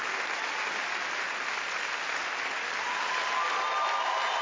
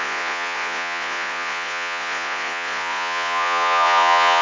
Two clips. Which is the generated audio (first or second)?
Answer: second